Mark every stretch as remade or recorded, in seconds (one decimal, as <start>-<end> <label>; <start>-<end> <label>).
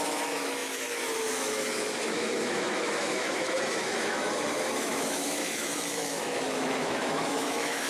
0.0-7.9 remade